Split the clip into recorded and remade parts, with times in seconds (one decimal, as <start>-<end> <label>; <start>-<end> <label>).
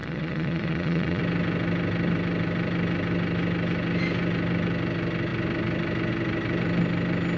0.0-1.2 remade; 1.2-7.4 recorded